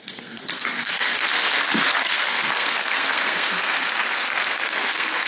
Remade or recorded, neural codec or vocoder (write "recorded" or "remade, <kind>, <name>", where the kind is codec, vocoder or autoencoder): remade, codec, SNAC